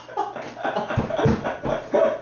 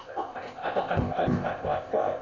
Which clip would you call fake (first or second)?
second